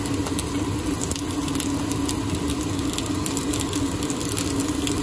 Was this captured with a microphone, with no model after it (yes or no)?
yes